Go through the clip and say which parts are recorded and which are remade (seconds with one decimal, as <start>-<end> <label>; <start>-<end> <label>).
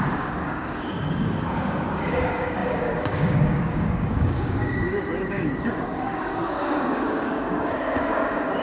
0.0-8.6 remade